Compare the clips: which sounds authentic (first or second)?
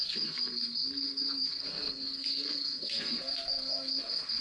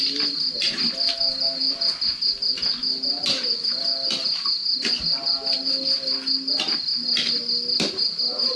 second